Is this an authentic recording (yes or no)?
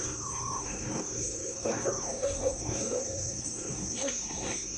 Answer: no